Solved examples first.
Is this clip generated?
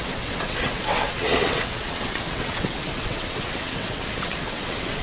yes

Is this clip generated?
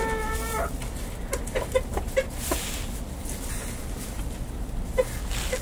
no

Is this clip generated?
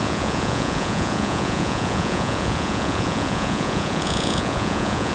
yes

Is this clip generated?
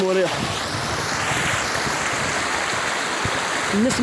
no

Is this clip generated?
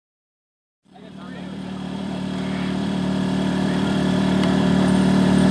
yes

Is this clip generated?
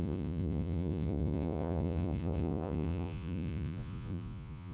yes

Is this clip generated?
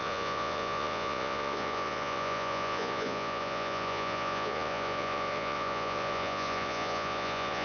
yes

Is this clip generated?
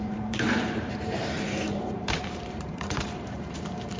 yes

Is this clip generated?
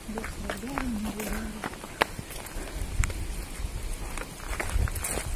no